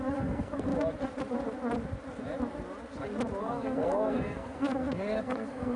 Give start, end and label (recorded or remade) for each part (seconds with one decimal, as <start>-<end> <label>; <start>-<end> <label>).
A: 0.0-0.7 remade; 0.7-3.4 recorded; 3.4-5.8 remade